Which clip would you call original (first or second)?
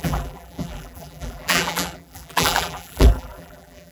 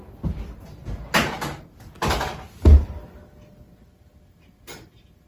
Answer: second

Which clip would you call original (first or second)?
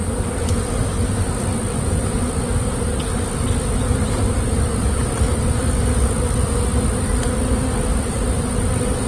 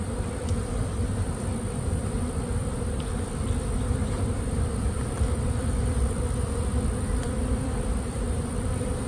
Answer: first